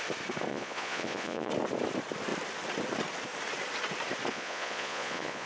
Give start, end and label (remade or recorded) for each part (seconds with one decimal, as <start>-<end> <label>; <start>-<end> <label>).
0.0-0.5 recorded; 0.5-1.5 remade; 1.5-4.3 recorded; 4.3-5.5 remade